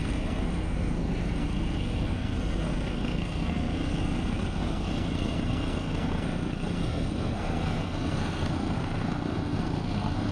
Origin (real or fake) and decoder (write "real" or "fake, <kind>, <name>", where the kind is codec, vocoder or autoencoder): fake, codec, SNAC